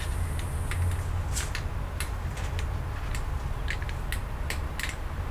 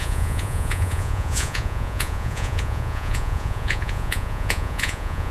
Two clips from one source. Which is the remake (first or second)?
second